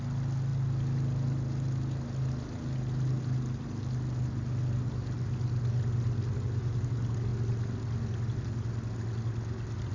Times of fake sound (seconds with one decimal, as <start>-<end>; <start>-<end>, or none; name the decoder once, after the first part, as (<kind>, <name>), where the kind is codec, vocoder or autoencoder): none